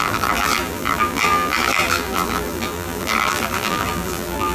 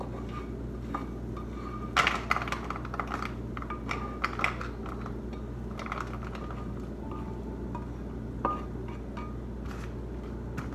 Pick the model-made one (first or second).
first